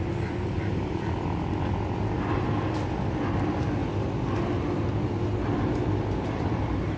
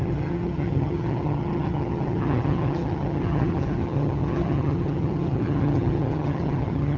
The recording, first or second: first